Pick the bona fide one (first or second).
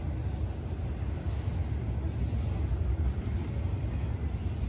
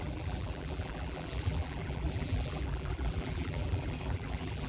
first